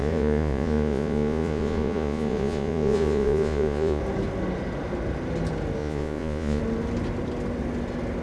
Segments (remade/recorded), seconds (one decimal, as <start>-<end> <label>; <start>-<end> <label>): 0.0-4.0 remade; 4.0-5.8 recorded; 5.8-6.6 remade; 6.6-8.2 recorded